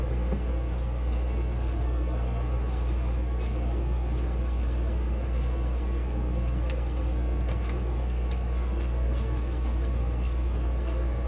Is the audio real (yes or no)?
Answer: no